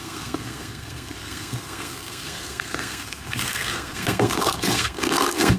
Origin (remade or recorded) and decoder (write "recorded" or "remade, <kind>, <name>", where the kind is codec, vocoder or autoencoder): remade, codec, SNAC